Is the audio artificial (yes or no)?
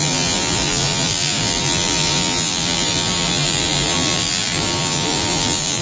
yes